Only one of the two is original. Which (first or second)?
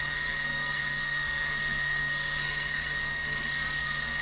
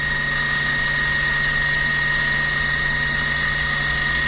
second